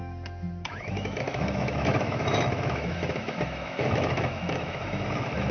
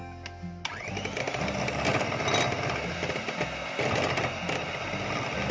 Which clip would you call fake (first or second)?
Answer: first